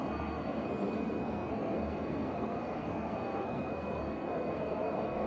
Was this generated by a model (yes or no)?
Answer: yes